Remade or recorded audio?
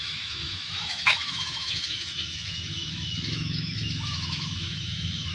remade